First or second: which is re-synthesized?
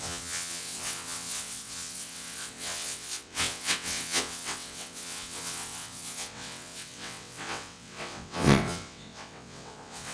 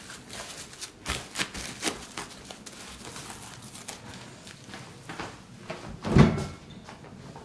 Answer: first